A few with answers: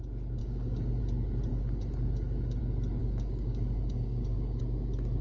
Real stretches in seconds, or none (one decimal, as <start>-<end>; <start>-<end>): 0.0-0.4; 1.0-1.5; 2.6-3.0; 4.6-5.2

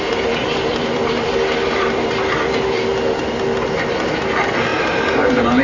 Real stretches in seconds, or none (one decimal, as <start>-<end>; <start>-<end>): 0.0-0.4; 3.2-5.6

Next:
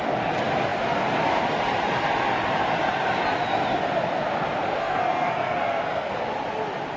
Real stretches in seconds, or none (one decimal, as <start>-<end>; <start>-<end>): 0.0-4.8; 6.1-7.0